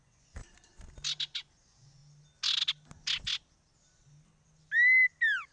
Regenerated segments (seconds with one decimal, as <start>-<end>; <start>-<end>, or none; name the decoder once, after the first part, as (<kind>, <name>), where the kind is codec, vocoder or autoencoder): 0.0-0.4 (vocoder, Vocos); 1.5-2.0